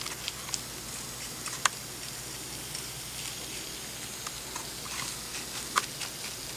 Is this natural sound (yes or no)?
yes